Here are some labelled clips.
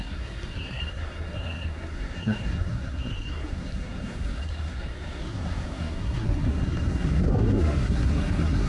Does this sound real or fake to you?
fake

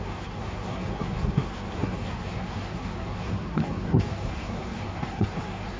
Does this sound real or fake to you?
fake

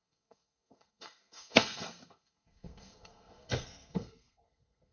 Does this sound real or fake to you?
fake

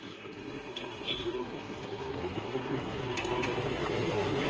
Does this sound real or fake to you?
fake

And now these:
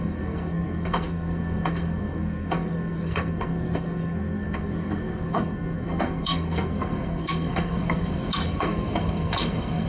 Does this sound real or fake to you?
fake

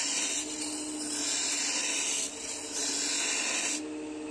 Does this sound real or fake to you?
real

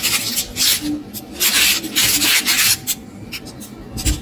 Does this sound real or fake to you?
real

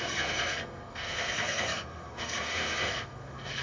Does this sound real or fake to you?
fake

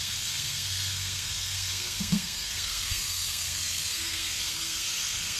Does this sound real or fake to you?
fake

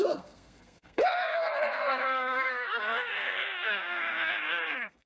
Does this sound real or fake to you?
fake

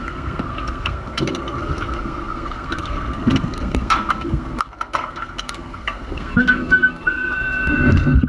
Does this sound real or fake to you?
fake